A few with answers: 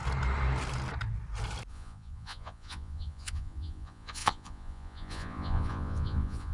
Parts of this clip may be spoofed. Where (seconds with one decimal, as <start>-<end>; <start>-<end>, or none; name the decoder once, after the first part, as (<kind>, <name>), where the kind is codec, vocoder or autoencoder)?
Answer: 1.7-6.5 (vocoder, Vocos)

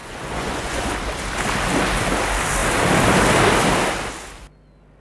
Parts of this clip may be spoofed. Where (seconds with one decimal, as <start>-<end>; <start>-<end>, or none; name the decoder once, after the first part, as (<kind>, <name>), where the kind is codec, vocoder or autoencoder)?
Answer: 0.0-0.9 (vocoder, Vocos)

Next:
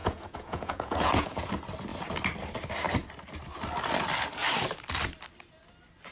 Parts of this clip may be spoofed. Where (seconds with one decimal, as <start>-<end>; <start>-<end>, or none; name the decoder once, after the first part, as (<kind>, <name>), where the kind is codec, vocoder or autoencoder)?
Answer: 0.0-1.5 (vocoder, Vocos)

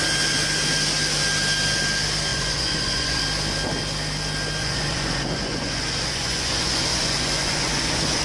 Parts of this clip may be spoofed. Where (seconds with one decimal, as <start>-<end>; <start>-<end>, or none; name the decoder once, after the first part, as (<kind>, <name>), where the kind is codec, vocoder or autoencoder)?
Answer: 2.3-3.2 (vocoder, Vocos); 4.6-8.2

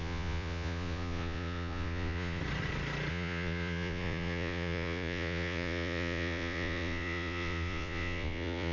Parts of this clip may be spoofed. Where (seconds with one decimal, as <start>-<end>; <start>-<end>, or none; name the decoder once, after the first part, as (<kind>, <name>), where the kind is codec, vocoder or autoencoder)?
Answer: 0.0-2.4 (vocoder, Vocos); 3.1-8.7

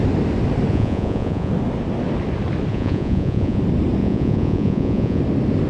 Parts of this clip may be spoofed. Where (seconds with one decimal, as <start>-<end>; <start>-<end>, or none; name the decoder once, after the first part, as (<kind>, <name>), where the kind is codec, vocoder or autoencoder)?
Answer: 0.7-1.5 (vocoder, Vocos); 2.7-3.6; 4.0-5.2